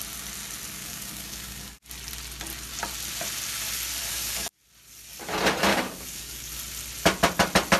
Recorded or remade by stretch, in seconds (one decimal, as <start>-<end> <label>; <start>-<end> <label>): 0.0-0.8 recorded; 0.8-1.9 remade; 1.9-4.1 recorded; 4.1-4.6 remade; 4.6-5.7 recorded; 5.7-6.5 remade; 6.5-7.8 recorded